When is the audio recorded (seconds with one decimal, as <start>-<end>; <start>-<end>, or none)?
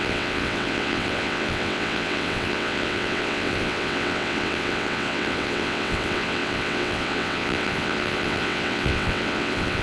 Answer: none